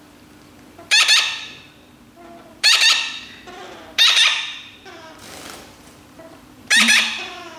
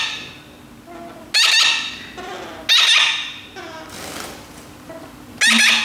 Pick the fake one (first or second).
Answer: first